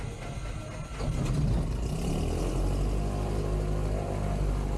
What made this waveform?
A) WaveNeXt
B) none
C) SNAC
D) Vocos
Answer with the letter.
B